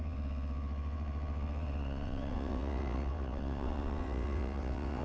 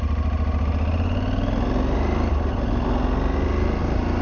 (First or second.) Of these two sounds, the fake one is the first